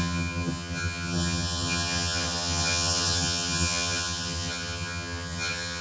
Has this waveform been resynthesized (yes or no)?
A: yes